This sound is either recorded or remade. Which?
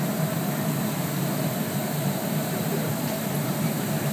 remade